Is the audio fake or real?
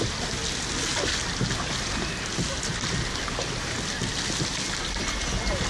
real